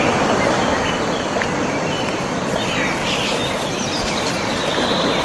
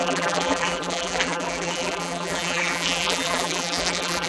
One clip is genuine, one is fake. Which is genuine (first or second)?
first